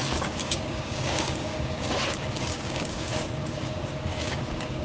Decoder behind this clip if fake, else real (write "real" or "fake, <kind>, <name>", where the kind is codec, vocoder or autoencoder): fake, codec, DAC